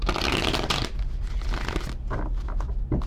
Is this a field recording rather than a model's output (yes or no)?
yes